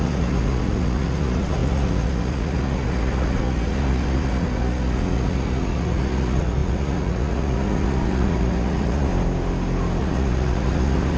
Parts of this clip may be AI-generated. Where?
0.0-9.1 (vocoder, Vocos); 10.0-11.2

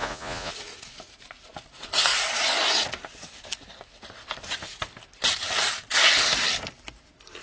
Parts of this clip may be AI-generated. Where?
0.0-0.5 (vocoder, Vocos)

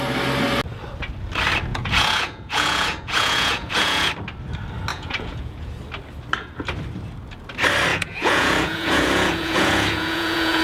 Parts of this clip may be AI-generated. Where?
1.7-4.1 (vocoder, Vocos); 4.9-5.7; 7.9-10.6

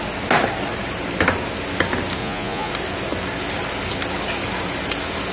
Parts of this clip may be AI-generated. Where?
2.2-2.7 (vocoder, Vocos)

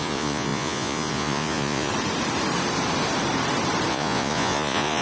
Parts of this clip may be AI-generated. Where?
0.0-1.9 (vocoder, Vocos); 3.9-5.0

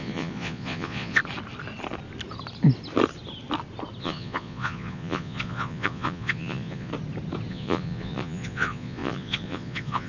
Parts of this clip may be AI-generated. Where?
0.0-1.2 (vocoder, Vocos); 4.0-6.9; 7.5-10.1

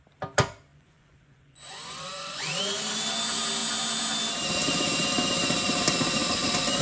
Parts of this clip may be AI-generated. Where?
0.7-2.6 (vocoder, Vocos)

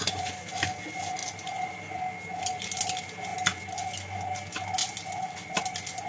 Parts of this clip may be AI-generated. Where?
none